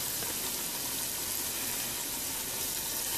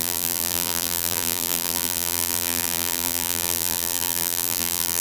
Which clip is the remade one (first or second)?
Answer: second